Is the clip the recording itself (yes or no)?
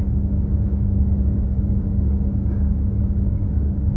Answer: no